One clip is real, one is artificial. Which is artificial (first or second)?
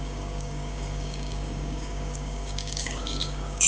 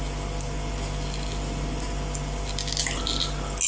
first